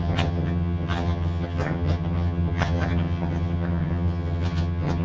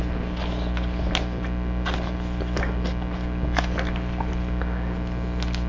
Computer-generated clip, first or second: first